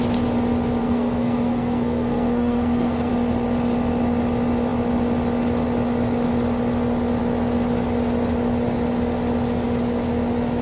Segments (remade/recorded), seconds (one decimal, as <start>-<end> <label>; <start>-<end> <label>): 0.0-0.8 recorded; 0.8-3.1 remade; 3.1-10.6 recorded